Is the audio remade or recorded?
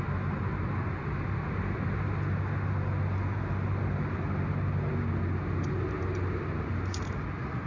recorded